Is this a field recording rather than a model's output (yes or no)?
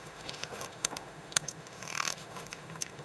no